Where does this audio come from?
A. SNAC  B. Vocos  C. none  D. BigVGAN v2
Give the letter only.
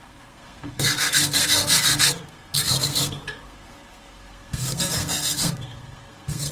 A